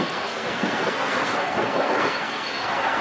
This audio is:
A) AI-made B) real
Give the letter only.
A